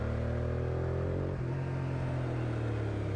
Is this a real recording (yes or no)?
yes